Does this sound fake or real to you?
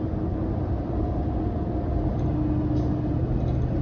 real